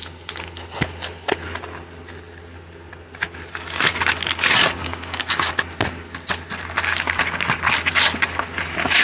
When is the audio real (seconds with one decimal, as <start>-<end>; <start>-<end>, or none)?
0.0-4.8; 5.5-9.0